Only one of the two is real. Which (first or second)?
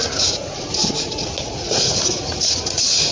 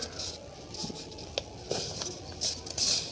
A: second